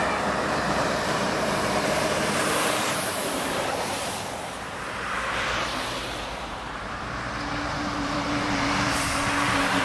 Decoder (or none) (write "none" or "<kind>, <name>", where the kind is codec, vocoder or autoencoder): vocoder, BigVGAN v2